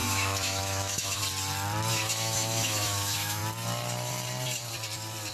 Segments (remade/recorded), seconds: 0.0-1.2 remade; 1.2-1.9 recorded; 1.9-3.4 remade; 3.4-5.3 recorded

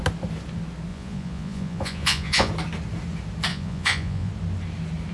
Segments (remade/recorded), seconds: 0.0-0.9 recorded; 0.9-2.5 remade; 2.5-3.5 recorded; 3.5-4.3 remade; 4.3-5.1 recorded

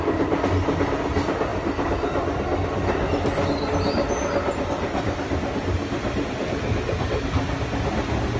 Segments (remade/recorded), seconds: 0.0-8.4 recorded

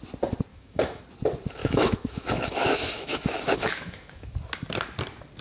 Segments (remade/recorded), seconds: 0.0-0.5 recorded; 0.5-1.0 remade; 1.0-1.6 recorded; 1.6-4.3 remade; 4.3-5.4 recorded

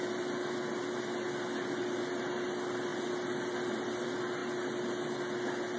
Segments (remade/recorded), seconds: 0.0-5.8 recorded

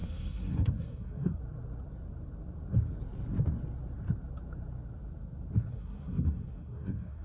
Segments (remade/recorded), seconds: 0.0-1.4 remade; 1.4-5.7 recorded; 5.7-7.2 remade

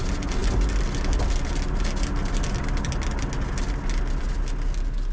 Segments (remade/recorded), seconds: 0.0-5.1 recorded

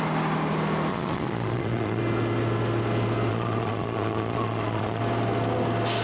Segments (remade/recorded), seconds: 0.0-0.9 recorded; 0.9-2.0 remade; 2.0-3.3 recorded; 3.3-5.0 remade; 5.0-6.0 recorded